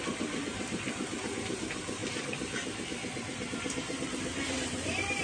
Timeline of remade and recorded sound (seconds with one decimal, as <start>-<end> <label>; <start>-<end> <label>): 0.0-5.2 recorded